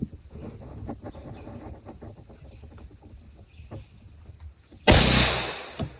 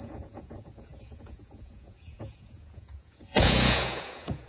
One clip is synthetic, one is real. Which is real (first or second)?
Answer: first